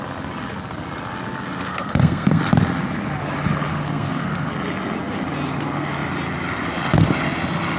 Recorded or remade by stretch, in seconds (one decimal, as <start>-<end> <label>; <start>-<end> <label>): 0.0-1.7 recorded; 1.7-2.4 remade; 2.4-3.7 recorded; 3.7-4.5 remade; 4.5-7.8 recorded